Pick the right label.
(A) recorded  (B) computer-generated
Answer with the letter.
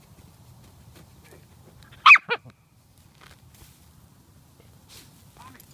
A